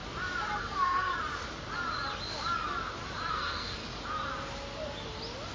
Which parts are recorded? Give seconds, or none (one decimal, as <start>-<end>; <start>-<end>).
0.0-0.6; 1.1-3.3; 3.8-5.5

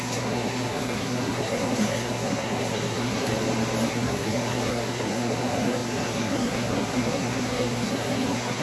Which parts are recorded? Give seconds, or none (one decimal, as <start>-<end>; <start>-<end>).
3.3-3.9

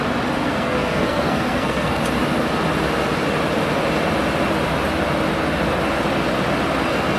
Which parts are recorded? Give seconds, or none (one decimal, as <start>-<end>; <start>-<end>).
0.0-0.4; 2.0-7.2

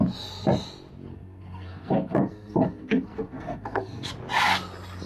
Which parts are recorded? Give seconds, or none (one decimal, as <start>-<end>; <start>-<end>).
0.0-1.1; 4.1-5.1

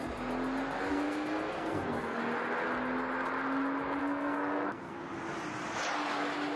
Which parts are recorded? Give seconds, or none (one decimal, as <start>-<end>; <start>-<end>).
0.0-0.9; 2.2-4.0; 5.0-6.6